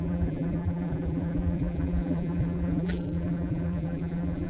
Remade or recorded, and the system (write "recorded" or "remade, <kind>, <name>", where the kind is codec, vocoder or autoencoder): remade, vocoder, BigVGAN v2